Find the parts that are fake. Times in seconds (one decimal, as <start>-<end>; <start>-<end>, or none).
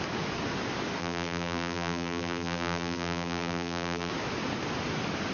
1.0-4.1